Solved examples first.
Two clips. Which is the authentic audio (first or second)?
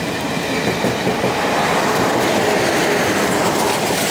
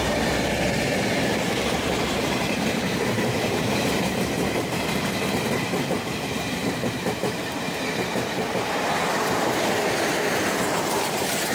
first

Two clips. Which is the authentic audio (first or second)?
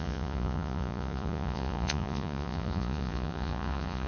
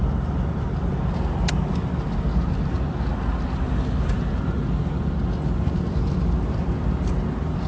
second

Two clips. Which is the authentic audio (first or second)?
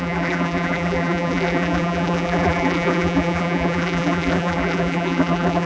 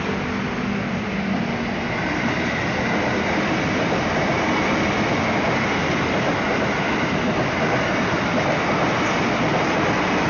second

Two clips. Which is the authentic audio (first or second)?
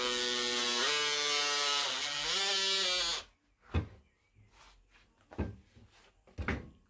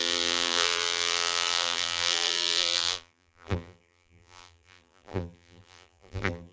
first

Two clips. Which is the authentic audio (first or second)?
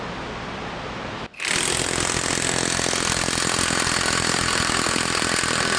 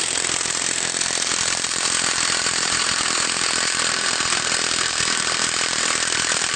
first